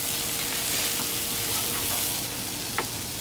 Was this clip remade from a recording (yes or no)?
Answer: no